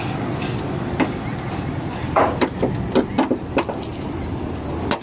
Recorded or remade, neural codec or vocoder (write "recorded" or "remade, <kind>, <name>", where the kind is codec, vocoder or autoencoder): recorded